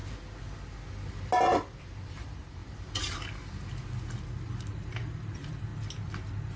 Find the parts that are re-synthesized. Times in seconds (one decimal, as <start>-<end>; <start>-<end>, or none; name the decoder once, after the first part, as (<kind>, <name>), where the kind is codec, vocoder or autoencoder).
1.8-5.7 (vocoder, BigVGAN v2)